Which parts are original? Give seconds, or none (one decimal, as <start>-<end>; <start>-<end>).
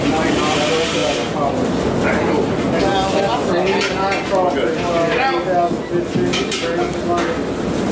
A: 0.0-7.9